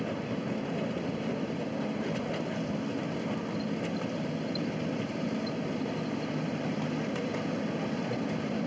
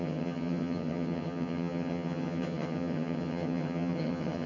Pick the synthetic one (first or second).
second